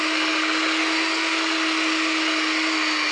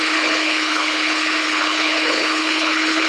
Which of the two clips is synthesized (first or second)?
second